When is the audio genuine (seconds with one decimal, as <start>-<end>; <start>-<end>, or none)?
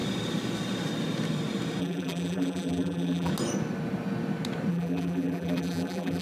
0.0-1.8; 3.3-4.7